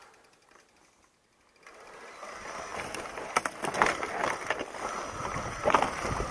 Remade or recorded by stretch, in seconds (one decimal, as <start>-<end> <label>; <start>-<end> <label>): 0.0-6.3 recorded

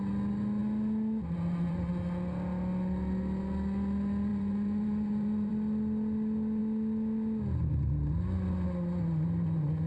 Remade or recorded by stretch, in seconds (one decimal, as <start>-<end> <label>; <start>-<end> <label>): 0.0-4.3 recorded; 4.3-5.5 remade; 5.5-9.9 recorded

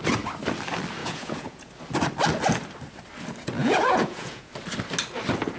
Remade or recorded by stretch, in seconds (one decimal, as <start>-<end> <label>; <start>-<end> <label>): 0.0-1.0 recorded; 1.0-1.7 remade; 1.7-3.6 recorded; 3.6-4.5 remade; 4.5-5.6 recorded

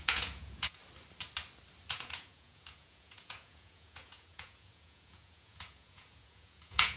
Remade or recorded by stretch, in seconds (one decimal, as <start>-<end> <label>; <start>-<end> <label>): 0.0-0.8 remade; 0.8-1.9 recorded; 1.9-7.0 remade